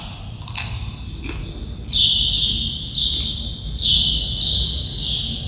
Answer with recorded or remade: recorded